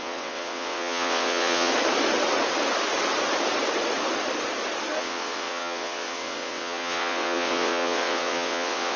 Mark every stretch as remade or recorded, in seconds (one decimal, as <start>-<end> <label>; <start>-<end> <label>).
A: 0.0-1.7 remade; 1.7-5.0 recorded; 5.0-9.0 remade